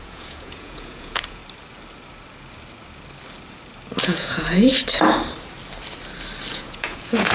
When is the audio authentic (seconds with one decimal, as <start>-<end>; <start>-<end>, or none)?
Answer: 1.4-4.0; 4.7-6.5

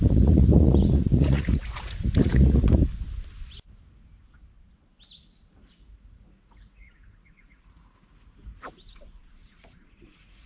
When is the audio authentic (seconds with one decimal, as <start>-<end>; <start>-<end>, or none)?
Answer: 2.8-5.6

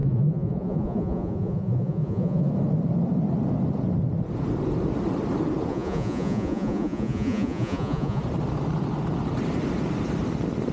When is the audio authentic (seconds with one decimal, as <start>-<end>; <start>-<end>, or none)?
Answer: 2.5-5.7; 8.2-10.7

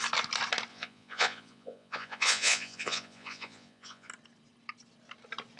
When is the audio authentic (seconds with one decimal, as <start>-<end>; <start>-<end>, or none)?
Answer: 0.0-0.7; 4.1-5.6

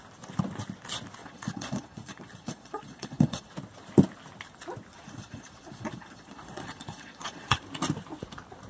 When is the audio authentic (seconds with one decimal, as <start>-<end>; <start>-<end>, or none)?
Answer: 0.0-1.2; 3.5-4.9; 7.6-8.7

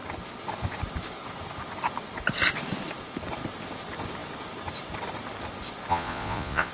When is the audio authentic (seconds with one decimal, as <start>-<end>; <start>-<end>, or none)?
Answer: 0.0-5.9

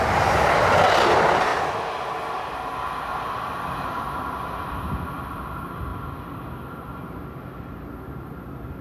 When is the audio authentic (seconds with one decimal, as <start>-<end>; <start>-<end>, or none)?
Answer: 0.0-8.8